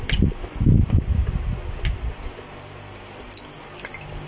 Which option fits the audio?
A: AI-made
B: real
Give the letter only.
B